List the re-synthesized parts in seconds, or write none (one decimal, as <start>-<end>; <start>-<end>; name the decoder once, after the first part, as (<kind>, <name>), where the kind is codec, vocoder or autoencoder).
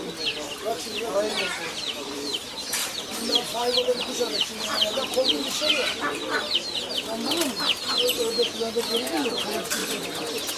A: 2.8-6.0 (vocoder, BigVGAN v2)